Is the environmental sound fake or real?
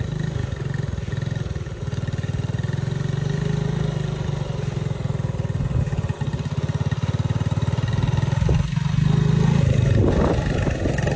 real